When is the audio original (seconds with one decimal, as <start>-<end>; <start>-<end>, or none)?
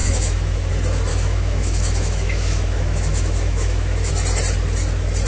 0.7-1.1; 4.1-5.3